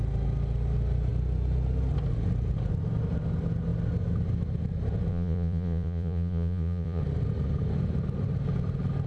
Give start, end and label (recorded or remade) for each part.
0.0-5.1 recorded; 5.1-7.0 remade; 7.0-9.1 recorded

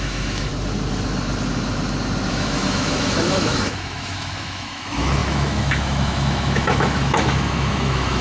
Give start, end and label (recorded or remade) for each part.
0.0-0.5 remade; 0.5-2.3 recorded; 2.3-8.2 remade